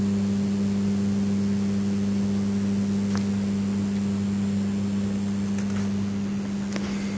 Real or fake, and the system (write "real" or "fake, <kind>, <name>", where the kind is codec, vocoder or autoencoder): real